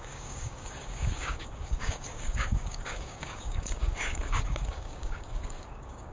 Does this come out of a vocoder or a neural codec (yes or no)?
yes